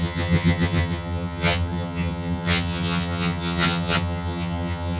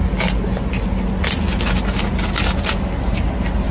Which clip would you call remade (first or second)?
first